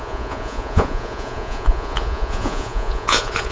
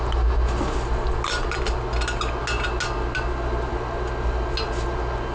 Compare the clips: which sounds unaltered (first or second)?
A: second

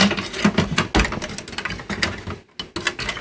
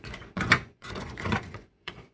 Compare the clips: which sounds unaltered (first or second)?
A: first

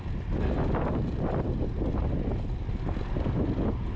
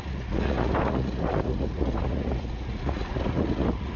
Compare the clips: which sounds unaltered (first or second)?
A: first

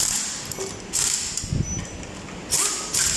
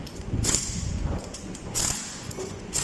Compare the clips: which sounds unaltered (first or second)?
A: first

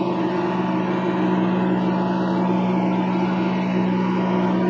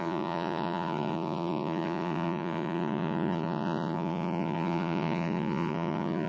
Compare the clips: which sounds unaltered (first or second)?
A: first